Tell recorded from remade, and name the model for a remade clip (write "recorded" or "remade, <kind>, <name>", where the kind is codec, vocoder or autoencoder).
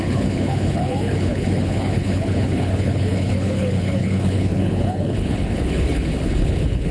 remade, codec, HILCodec